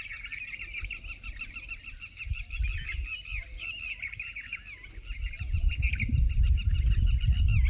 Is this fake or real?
real